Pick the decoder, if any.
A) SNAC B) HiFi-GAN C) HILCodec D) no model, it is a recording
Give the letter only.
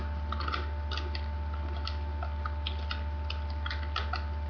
D